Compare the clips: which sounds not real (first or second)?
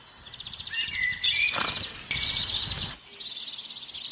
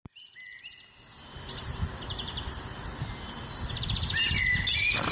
first